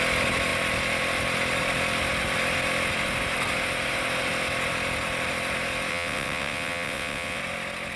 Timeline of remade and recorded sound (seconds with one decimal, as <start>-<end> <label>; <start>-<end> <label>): 0.0-5.9 recorded; 5.9-7.4 remade; 7.4-8.0 recorded